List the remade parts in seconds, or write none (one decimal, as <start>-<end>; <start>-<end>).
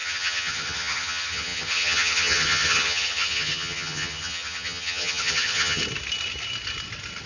0.0-5.8